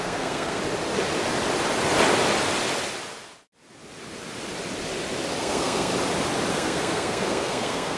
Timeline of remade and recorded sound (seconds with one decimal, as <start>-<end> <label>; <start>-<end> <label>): 0.0-0.6 remade; 0.6-5.4 recorded; 5.4-5.9 remade; 5.9-6.5 recorded; 6.5-8.0 remade